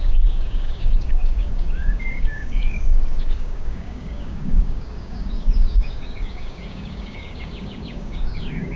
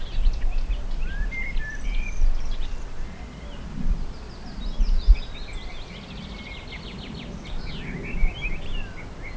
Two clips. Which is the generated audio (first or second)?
first